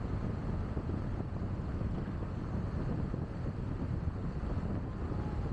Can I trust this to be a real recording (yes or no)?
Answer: yes